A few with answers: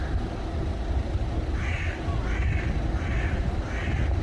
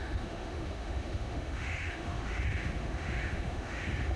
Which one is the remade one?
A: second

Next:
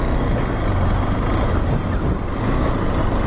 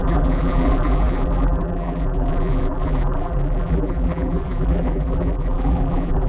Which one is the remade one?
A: second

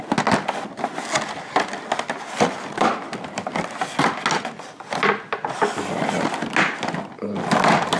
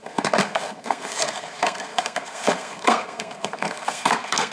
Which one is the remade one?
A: second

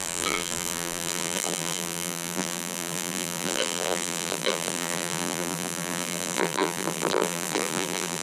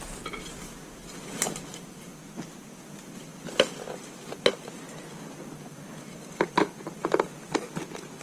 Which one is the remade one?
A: first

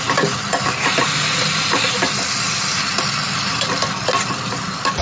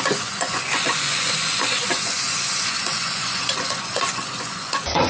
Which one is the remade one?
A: second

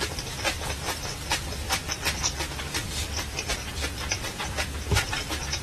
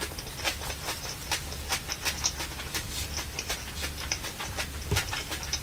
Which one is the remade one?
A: first